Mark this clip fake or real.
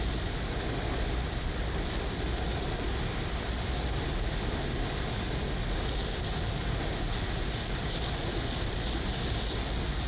real